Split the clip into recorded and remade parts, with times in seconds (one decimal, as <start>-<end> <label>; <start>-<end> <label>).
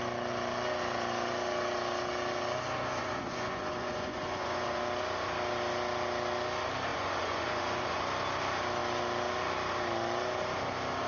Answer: 0.0-3.0 recorded; 3.0-4.8 remade; 4.8-6.9 recorded; 6.9-8.0 remade; 8.0-11.1 recorded